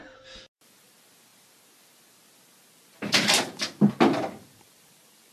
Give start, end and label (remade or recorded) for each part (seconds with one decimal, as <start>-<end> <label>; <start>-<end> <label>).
0.0-5.3 recorded

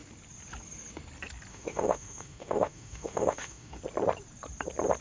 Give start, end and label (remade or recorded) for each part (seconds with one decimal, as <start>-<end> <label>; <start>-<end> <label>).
0.0-1.5 recorded; 1.5-3.8 remade; 3.8-5.0 recorded

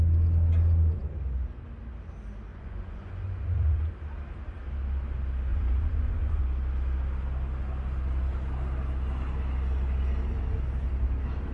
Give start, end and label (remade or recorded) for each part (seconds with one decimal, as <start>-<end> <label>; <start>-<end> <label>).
0.0-2.5 recorded; 2.5-3.9 remade; 3.9-5.5 recorded; 5.5-6.4 remade; 6.4-11.5 recorded

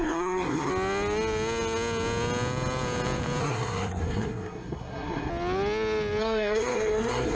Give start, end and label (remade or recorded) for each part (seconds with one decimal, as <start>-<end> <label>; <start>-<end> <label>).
0.0-0.7 remade; 0.7-3.4 recorded; 3.4-5.3 remade; 5.3-6.2 recorded; 6.2-7.4 remade

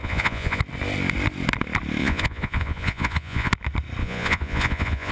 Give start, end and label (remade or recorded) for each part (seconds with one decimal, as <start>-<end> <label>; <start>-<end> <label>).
0.0-0.6 remade; 0.6-2.0 recorded; 2.0-3.5 remade; 3.5-4.0 recorded; 4.0-5.1 remade

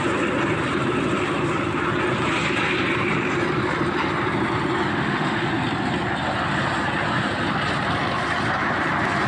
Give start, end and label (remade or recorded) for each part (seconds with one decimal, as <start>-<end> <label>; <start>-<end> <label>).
0.0-4.9 recorded; 4.9-5.5 remade; 5.5-9.3 recorded

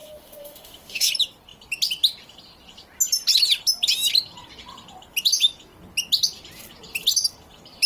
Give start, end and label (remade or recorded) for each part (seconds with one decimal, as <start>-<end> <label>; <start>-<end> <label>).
0.0-1.1 remade; 1.1-7.9 recorded

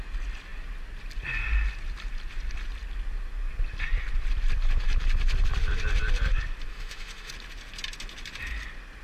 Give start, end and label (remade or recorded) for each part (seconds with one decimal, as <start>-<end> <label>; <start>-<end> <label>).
0.0-6.7 recorded; 6.7-7.3 remade; 7.3-9.0 recorded